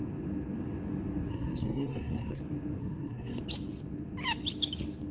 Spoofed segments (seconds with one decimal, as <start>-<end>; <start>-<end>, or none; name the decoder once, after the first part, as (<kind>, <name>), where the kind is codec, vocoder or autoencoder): 1.3-2.4 (codec, SNAC); 2.8-3.4